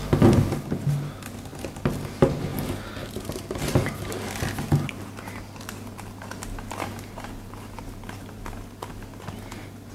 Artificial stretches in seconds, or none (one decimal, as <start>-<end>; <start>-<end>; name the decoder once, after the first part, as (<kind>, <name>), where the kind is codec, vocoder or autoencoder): 1.5-2.1 (vocoder, BigVGAN v2); 2.5-3.1; 4.4-9.5